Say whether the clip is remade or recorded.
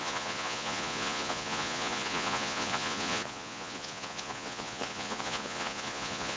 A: remade